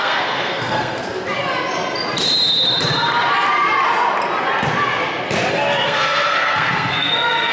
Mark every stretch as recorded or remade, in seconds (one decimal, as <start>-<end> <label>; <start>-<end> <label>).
0.0-1.0 remade; 1.0-5.5 recorded; 5.5-7.5 remade